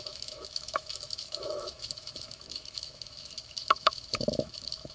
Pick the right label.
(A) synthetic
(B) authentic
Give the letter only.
A